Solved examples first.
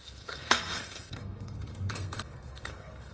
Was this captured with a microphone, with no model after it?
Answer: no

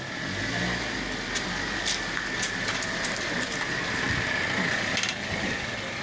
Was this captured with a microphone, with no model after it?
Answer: yes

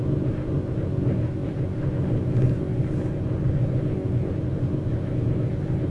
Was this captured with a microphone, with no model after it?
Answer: no